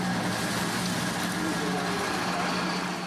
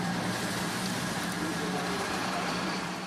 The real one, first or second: first